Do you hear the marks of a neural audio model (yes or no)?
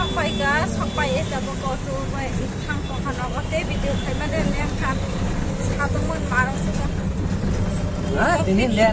no